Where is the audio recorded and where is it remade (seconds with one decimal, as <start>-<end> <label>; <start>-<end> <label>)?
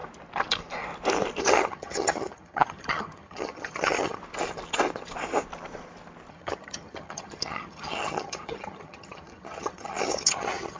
0.0-1.4 recorded; 1.4-4.2 remade; 4.2-6.3 recorded; 6.3-10.8 remade